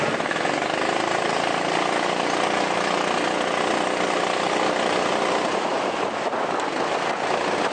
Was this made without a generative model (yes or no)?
yes